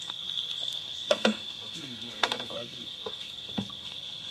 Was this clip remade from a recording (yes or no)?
yes